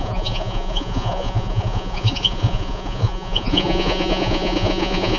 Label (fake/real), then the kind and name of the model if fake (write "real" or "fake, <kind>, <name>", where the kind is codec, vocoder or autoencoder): fake, vocoder, Vocos